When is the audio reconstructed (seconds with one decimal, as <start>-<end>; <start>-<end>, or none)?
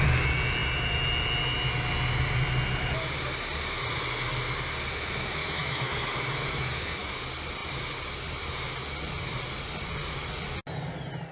5.4-7.1